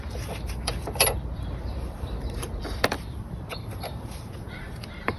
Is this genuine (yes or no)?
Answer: no